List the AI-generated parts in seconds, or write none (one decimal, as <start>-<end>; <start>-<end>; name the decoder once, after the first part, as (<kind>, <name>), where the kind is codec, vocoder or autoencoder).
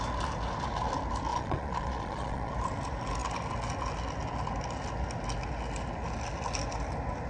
1.3-2.5 (vocoder, Vocos)